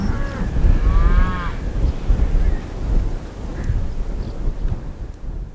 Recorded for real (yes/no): yes